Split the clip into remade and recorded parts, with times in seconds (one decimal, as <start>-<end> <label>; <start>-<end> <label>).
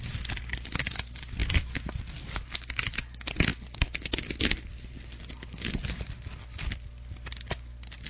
0.0-8.1 recorded